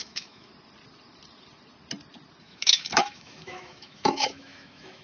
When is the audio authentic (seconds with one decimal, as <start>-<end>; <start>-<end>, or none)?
0.5-2.4